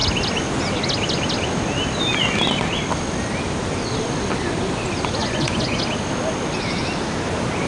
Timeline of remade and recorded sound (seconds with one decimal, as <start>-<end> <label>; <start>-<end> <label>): 0.0-5.2 recorded; 5.2-5.8 remade; 5.8-7.7 recorded